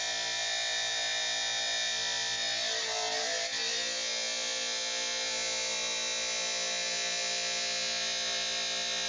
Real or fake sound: real